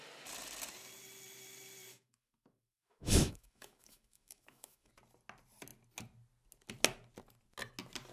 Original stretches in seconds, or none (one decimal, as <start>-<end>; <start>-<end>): 0.0-1.9; 4.9-8.1